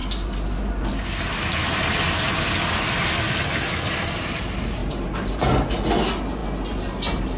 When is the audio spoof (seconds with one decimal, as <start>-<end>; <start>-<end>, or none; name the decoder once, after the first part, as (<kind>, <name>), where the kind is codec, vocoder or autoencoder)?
4.8-5.4 (vocoder, BigVGAN v2)

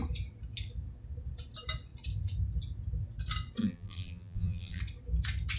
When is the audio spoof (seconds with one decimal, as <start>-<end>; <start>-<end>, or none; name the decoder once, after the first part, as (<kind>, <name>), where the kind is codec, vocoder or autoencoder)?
3.6-4.8 (vocoder, BigVGAN v2)

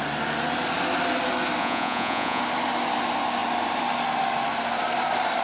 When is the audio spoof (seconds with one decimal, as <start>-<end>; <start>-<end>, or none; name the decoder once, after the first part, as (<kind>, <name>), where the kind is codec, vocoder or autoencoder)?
1.6-2.4 (vocoder, Vocos)

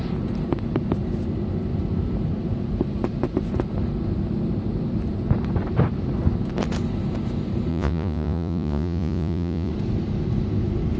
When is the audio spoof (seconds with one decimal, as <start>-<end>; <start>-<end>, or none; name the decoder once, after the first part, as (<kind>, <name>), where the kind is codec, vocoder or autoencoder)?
7.7-9.7 (vocoder, Vocos)

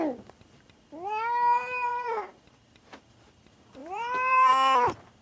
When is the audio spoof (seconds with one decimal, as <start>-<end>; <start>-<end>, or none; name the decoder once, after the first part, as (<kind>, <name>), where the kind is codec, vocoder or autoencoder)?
1.9-3.1 (vocoder, BigVGAN v2); 3.8-4.5